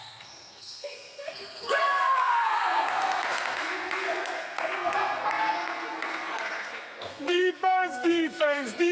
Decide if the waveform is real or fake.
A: fake